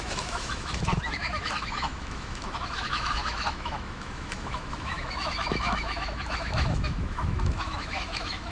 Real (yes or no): no